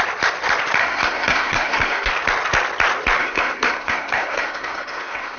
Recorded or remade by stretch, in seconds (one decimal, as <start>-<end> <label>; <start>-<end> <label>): 0.0-0.8 recorded; 0.8-2.1 remade; 2.1-3.2 recorded; 3.2-5.4 remade